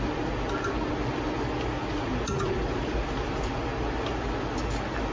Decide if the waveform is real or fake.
real